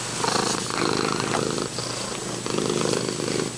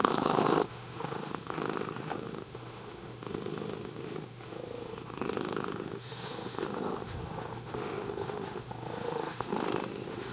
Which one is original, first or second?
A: first